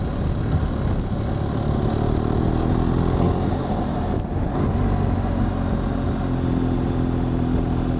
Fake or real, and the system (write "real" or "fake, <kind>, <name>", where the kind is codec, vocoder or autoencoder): real